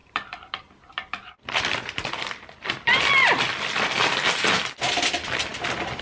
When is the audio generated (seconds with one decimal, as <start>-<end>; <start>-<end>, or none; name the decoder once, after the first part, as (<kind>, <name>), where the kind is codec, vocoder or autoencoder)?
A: 0.0-3.6 (vocoder, BigVGAN v2)